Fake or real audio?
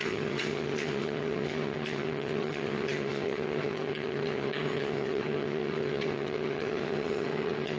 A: fake